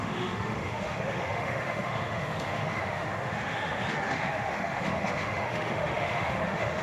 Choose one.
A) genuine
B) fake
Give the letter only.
B